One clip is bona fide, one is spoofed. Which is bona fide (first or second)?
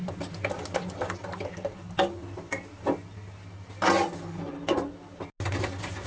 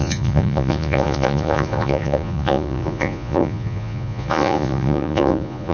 first